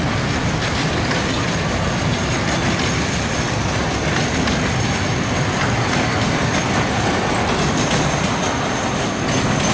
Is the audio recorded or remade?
recorded